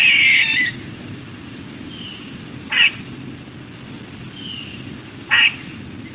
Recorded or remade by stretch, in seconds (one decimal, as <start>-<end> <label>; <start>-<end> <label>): 0.0-6.1 recorded